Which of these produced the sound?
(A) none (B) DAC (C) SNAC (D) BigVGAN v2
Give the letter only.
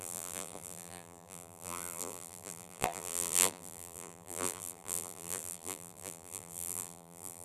D